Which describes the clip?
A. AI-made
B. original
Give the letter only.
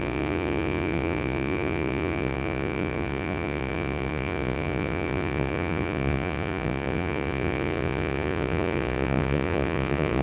A